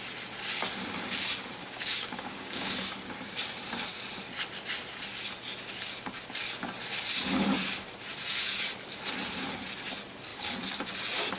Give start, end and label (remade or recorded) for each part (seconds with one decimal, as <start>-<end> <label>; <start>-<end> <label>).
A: 0.0-1.6 recorded; 1.6-2.7 remade; 2.7-11.4 recorded